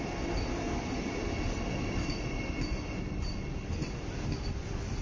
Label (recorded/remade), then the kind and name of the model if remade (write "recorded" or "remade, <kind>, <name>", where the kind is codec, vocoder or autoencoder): recorded